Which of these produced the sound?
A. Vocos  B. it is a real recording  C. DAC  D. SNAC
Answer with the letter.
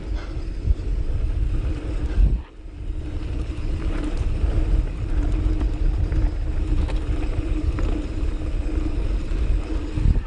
B